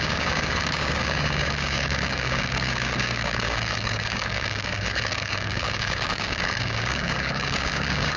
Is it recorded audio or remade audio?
remade